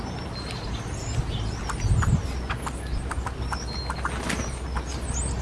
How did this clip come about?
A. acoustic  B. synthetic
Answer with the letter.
A